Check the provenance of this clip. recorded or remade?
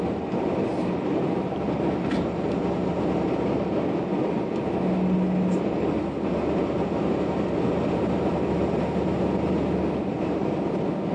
recorded